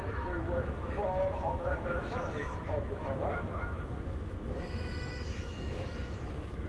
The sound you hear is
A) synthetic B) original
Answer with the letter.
A